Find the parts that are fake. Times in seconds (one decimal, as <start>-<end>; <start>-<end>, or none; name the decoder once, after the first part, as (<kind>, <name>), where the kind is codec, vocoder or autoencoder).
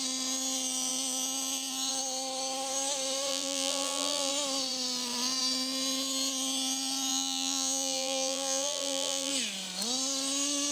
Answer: 3.3-4.3 (vocoder, BigVGAN v2); 7.1-9.3